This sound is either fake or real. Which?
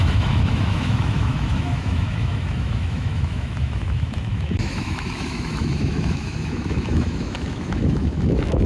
fake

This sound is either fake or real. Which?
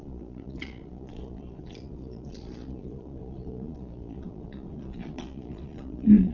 fake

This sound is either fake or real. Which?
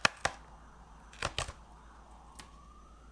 real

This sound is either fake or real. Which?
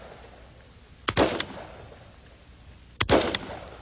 real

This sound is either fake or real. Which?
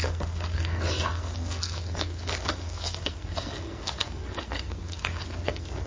fake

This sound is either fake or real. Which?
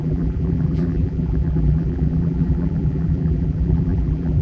fake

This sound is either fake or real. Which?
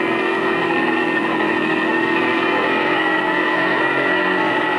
fake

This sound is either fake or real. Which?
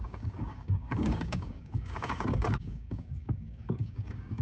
fake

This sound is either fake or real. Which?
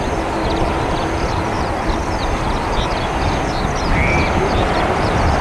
real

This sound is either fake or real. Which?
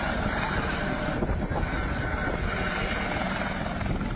fake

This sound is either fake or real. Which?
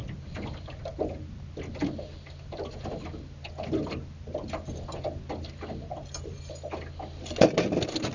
real